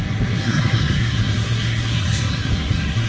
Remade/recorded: remade